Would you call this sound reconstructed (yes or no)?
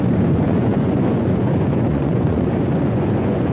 yes